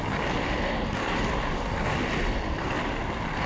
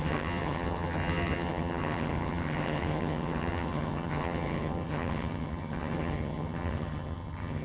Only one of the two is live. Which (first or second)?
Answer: first